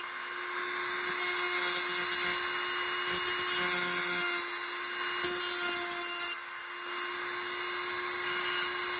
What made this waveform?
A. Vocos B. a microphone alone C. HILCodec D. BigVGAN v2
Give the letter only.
B